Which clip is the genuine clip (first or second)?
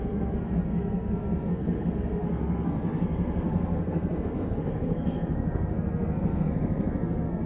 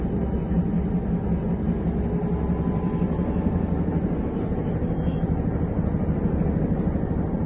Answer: second